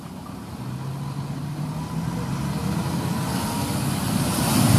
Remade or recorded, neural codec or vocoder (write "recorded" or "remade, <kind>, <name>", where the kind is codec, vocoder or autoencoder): recorded